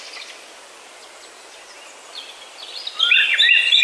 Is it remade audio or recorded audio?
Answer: recorded